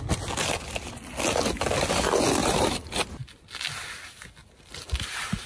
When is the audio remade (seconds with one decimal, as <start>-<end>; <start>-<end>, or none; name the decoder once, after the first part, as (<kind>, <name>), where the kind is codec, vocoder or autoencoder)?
2.4-3.3 (vocoder, BigVGAN v2)